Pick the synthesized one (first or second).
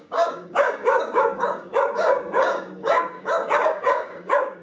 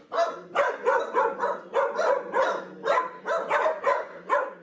first